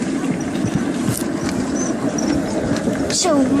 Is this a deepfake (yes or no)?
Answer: no